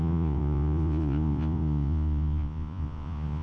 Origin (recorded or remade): remade